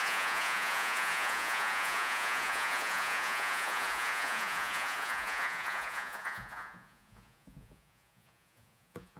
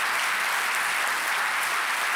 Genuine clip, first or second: second